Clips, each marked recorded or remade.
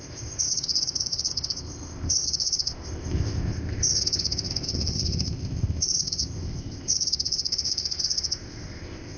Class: remade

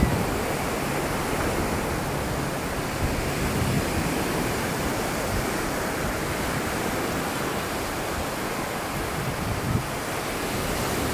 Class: recorded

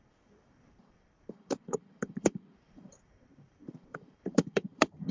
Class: remade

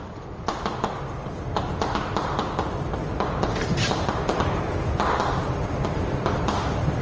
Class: recorded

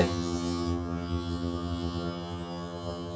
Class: remade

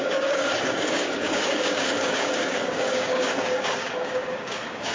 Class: remade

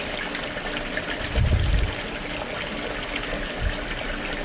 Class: recorded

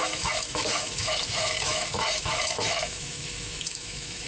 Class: remade